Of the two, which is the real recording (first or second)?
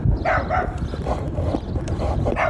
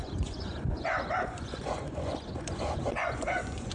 first